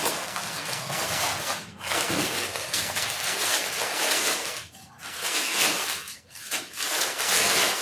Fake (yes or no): yes